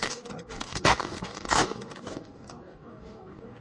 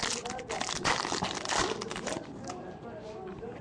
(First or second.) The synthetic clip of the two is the first